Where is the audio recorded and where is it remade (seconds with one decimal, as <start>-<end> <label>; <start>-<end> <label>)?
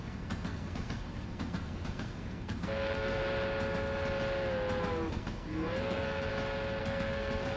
0.0-3.2 remade; 3.2-5.1 recorded; 5.1-6.3 remade; 6.3-6.8 recorded; 6.8-7.6 remade